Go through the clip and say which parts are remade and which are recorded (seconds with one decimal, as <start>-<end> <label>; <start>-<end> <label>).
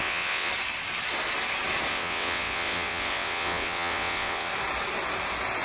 0.0-0.5 remade; 0.5-1.9 recorded; 1.9-4.5 remade; 4.5-5.6 recorded